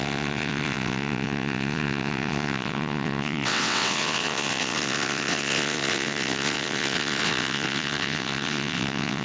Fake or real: fake